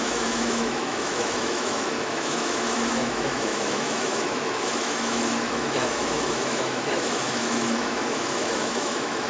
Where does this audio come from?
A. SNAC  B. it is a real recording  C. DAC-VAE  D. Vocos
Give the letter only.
C